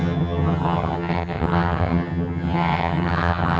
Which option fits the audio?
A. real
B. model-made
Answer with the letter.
B